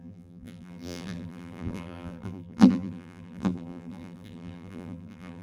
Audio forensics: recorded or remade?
remade